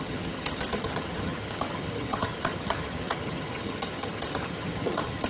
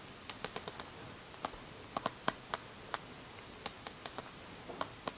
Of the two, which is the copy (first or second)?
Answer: first